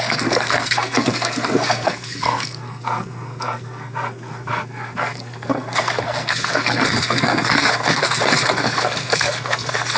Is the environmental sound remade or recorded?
remade